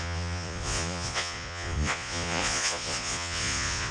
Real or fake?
fake